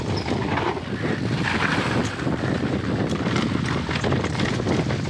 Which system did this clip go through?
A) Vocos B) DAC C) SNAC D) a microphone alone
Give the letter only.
D